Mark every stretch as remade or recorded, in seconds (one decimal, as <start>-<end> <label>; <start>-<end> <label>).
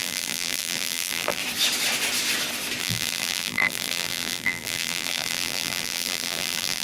0.0-1.4 remade; 1.4-2.8 recorded; 2.8-6.8 remade